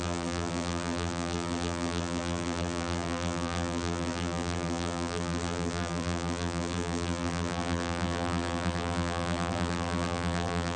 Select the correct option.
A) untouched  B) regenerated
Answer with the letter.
B